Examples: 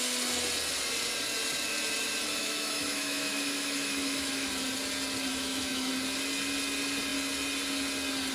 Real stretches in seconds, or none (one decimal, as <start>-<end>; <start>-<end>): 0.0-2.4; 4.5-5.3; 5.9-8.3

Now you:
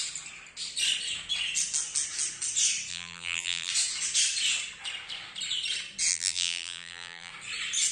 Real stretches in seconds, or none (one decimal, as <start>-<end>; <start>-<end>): 0.0-2.9; 3.7-6.1; 7.3-7.9

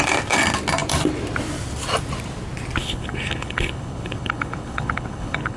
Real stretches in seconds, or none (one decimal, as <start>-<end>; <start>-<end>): 0.0-2.8

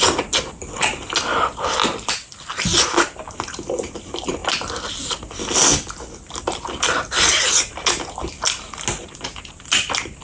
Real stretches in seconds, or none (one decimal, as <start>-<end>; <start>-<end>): 0.0-10.2

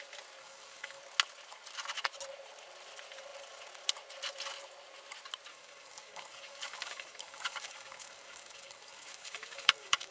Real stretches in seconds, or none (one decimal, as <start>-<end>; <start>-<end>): 0.0-0.4; 1.0-5.5

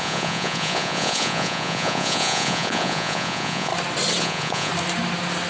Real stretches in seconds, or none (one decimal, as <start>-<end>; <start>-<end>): 3.7-4.2; 4.7-5.5

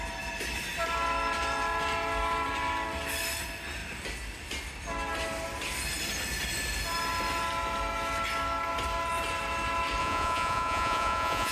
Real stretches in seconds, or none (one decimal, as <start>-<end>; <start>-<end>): 0.0-10.0

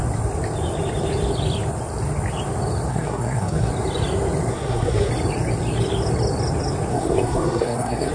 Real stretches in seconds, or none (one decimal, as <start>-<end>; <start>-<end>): 0.0-2.9; 3.7-4.5; 5.1-6.9